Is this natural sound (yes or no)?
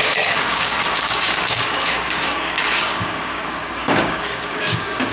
no